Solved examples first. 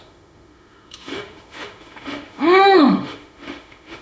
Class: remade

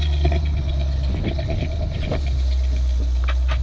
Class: recorded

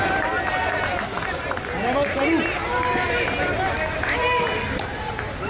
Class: recorded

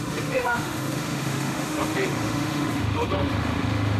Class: remade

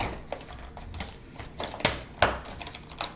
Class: recorded